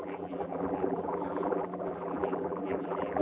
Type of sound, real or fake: fake